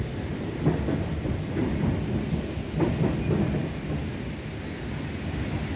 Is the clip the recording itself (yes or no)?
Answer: yes